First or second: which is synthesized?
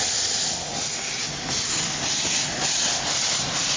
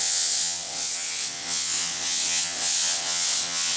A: second